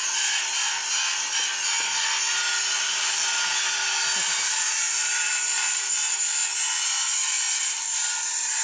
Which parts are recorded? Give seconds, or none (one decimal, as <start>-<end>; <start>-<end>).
0.0-2.8; 6.4-7.6